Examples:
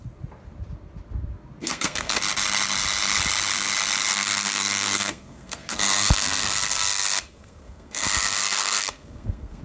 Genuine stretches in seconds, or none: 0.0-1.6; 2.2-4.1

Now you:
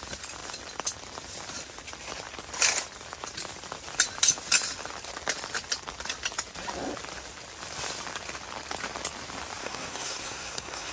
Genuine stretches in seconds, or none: 0.0-9.6

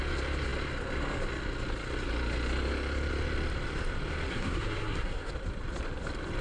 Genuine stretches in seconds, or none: 0.0-4.3; 5.3-6.4

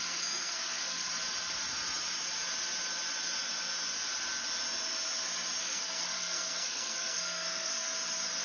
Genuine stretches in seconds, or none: 1.1-5.6; 7.7-8.4